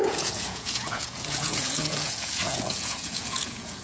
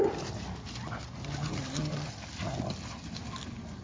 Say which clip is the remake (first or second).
first